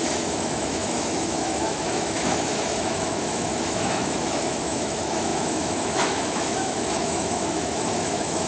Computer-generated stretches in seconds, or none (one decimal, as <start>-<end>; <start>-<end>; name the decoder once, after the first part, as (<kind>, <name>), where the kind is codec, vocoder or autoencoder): 0.0-8.5 (autoencoder, DAC-VAE)